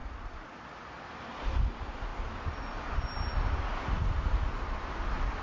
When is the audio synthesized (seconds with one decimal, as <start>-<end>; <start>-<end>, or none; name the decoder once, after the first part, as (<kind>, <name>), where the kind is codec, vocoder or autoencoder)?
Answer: none